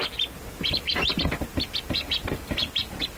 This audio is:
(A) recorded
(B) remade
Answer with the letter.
A